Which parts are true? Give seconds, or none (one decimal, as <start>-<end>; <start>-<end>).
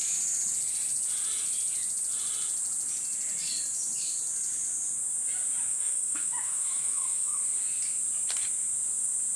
0.0-5.7; 7.4-9.4